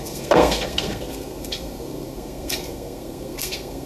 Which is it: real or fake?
fake